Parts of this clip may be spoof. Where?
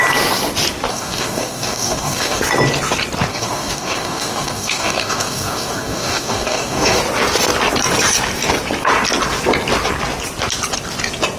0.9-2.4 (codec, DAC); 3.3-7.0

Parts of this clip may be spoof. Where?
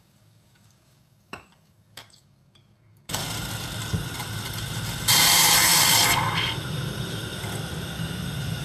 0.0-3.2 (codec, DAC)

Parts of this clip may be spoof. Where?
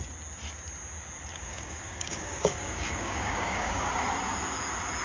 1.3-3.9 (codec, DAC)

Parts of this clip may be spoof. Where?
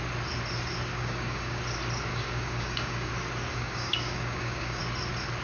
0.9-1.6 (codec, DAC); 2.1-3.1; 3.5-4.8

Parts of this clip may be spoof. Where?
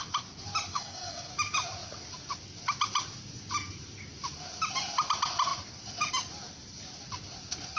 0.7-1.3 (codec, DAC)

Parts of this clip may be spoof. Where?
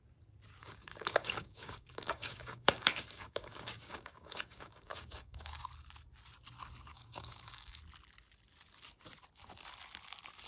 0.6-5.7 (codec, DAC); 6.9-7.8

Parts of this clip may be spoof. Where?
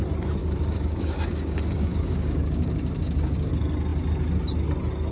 0.4-3.5 (codec, DAC)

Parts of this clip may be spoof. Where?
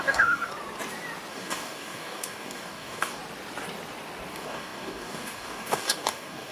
0.0-0.5 (codec, DAC); 1.3-3.2; 4.3-6.5